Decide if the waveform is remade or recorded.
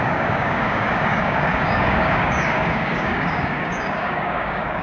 remade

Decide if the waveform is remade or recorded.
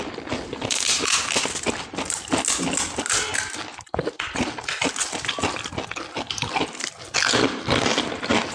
recorded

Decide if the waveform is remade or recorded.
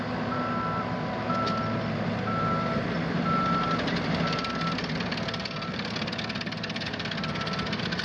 recorded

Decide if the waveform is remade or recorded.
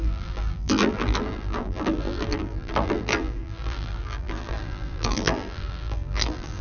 remade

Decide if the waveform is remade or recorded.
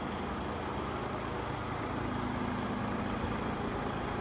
recorded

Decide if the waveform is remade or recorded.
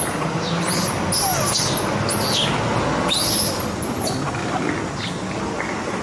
recorded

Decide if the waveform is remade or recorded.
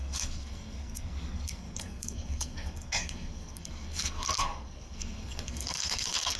remade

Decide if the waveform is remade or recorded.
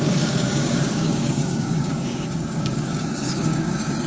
remade